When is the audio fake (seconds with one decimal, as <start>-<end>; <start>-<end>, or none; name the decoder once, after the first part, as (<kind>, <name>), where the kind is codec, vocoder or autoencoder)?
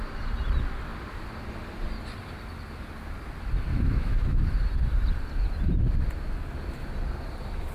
3.7-4.4 (autoencoder, DAC-VAE)